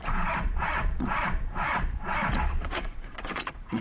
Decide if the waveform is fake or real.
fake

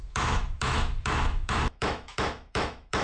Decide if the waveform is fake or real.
fake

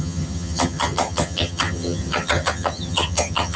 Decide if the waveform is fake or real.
fake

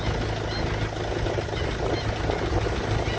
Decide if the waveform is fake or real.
real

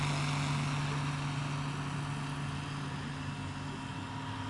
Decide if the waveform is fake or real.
real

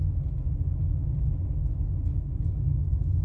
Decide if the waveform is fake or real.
real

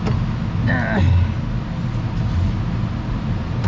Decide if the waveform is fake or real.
real